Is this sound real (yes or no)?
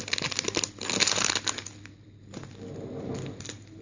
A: yes